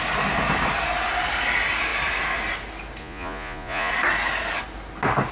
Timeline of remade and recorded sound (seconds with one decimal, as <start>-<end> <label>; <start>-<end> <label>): 0.0-3.0 recorded; 3.0-3.9 remade; 3.9-5.3 recorded